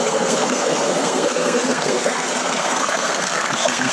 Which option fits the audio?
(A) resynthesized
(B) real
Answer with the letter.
A